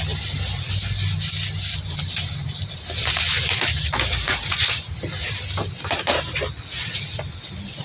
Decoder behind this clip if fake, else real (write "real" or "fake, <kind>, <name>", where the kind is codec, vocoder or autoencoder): real